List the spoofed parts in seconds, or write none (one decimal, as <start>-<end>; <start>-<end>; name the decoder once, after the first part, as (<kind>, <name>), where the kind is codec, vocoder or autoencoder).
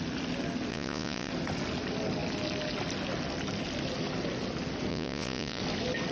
0.7-1.3 (vocoder, Vocos); 4.9-5.6